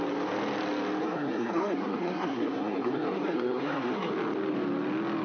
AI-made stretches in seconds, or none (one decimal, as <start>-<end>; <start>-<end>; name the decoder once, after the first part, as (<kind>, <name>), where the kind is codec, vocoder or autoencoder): 1.0-4.1 (codec, SNAC)